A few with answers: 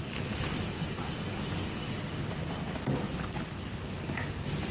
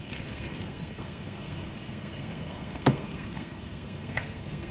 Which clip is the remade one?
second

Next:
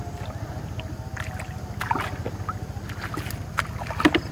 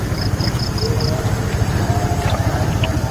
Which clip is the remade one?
second